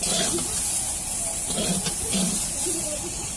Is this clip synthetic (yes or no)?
no